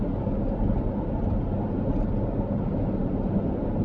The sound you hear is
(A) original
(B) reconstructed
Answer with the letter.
A